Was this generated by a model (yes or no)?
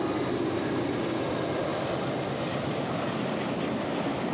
no